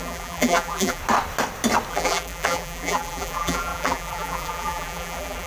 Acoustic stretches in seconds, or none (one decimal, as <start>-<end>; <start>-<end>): 1.0-1.9